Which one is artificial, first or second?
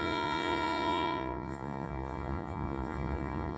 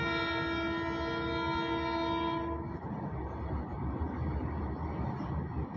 first